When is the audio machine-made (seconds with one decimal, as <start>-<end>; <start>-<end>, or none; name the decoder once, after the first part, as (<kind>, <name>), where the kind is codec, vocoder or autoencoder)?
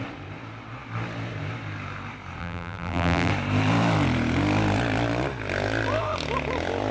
2.4-3.3 (vocoder, BigVGAN v2)